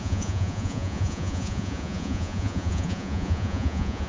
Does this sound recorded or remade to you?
remade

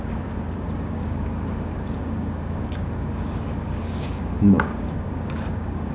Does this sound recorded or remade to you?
remade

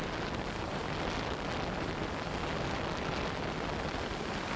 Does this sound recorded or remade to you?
recorded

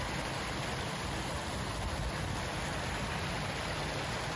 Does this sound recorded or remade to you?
recorded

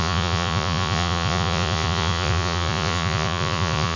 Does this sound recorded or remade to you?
remade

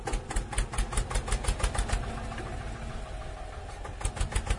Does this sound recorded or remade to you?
recorded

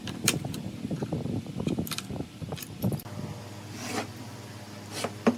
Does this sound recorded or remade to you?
recorded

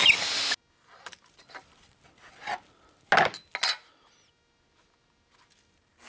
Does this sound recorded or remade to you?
recorded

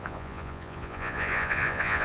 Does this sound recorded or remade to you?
remade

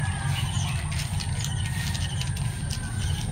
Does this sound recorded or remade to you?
recorded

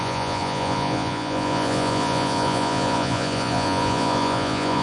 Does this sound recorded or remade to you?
remade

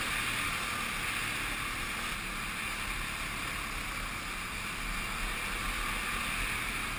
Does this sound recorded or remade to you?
recorded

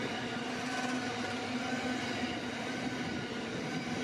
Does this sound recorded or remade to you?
recorded